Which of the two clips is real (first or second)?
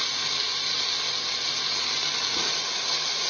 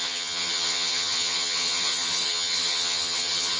first